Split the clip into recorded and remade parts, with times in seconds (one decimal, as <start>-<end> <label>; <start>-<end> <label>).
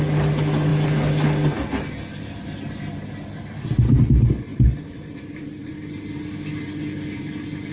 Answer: 0.0-4.5 recorded; 4.5-6.2 remade; 6.2-7.7 recorded